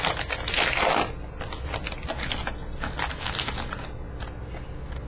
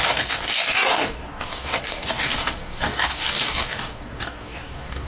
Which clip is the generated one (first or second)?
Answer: second